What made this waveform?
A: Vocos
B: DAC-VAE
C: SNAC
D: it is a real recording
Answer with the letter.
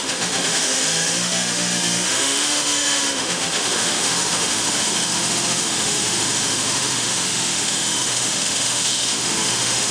B